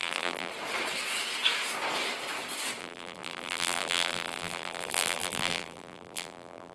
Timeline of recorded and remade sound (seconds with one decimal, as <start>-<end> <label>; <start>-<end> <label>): 0.0-0.5 remade; 0.5-2.8 recorded; 2.8-6.7 remade

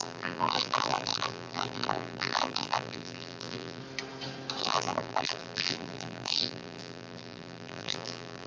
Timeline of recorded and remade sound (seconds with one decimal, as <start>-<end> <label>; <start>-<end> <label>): 0.0-3.8 remade; 3.8-4.6 recorded; 4.6-8.5 remade

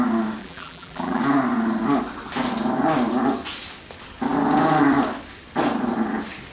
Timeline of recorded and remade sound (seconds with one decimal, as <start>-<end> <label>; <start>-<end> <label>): 0.0-0.4 recorded; 0.4-1.2 remade; 1.2-6.5 recorded

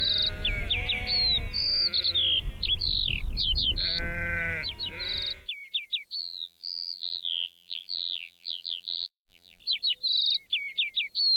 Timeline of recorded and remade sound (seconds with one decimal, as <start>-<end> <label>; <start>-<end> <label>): 0.0-6.2 recorded; 6.2-9.6 remade; 9.6-11.4 recorded

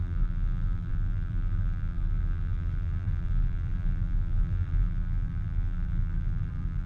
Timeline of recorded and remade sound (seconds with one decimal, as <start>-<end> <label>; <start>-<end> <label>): 0.0-6.9 remade

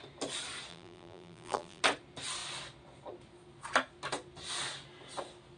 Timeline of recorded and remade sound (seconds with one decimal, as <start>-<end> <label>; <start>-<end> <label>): 0.0-0.7 recorded; 0.7-1.8 remade; 1.8-5.6 recorded

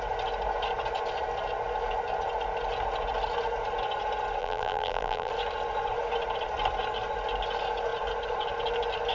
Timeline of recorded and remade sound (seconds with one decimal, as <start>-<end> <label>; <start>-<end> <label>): 0.0-4.4 recorded; 4.4-5.3 remade; 5.3-9.1 recorded

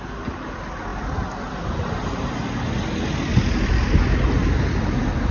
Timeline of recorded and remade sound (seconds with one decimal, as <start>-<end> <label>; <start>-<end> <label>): 0.0-5.3 recorded